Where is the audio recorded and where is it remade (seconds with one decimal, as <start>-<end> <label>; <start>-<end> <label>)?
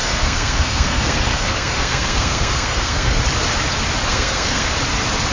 0.0-3.2 remade; 3.2-4.1 recorded; 4.1-4.7 remade; 4.7-5.3 recorded